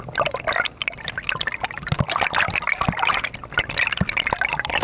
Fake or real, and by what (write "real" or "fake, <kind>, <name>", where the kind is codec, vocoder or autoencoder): real